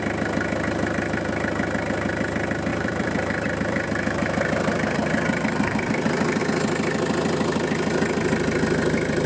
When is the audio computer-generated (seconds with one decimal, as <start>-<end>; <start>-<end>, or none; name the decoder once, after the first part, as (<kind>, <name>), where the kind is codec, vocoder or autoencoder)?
2.7-6.4 (vocoder, BigVGAN v2)